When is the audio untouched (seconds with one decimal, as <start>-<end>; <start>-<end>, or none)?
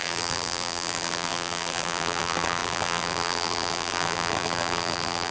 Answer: none